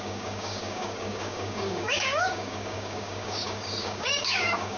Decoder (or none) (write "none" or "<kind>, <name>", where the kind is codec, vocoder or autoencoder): codec, DAC